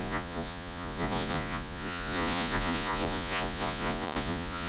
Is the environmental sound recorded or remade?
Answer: remade